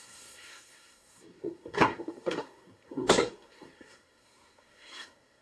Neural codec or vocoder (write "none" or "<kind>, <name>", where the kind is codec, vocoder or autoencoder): codec, SNAC